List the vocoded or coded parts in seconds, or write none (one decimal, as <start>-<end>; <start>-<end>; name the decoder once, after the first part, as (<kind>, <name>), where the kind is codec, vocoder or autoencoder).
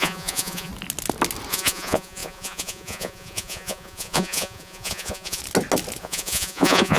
0.0-0.7 (vocoder, Vocos); 1.5-5.4; 6.0-7.0